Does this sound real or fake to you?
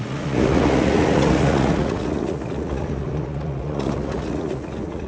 fake